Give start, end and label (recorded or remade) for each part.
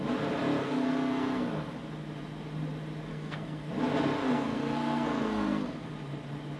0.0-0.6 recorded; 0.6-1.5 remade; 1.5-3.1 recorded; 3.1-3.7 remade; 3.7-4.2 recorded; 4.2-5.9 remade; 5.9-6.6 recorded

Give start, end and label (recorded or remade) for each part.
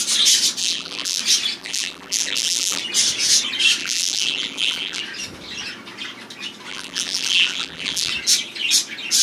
0.0-0.6 recorded; 0.6-1.2 remade; 1.2-1.6 recorded; 1.6-2.8 remade; 2.8-3.8 recorded; 3.8-5.0 remade; 5.0-6.7 recorded; 6.7-8.1 remade; 8.1-9.2 recorded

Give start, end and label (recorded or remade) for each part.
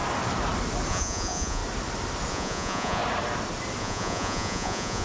0.0-0.9 recorded; 0.9-1.6 remade; 1.6-2.3 recorded; 2.3-3.0 remade; 3.0-3.8 recorded; 3.8-5.0 remade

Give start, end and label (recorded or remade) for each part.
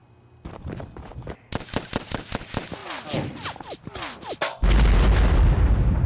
0.0-6.1 recorded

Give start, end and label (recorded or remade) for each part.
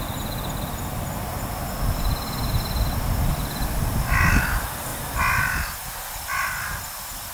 0.0-7.3 recorded